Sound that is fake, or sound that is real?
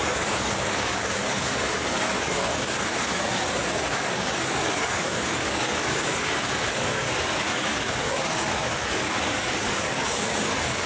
fake